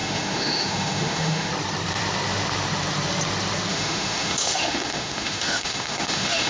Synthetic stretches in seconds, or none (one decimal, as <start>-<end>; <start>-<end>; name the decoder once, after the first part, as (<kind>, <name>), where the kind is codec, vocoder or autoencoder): 0.0-1.5 (autoencoder, DAC-VAE); 3.7-6.5